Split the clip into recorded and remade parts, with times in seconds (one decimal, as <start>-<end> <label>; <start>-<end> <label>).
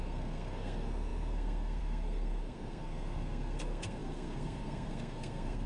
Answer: 0.0-5.7 remade